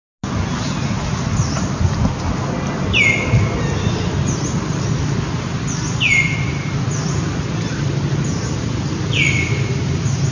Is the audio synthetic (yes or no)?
no